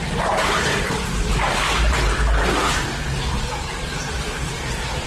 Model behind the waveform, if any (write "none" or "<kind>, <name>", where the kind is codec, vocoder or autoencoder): vocoder, BigVGAN v2